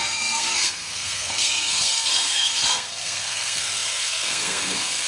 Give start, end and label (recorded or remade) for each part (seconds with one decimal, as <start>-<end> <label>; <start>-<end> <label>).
0.0-5.1 remade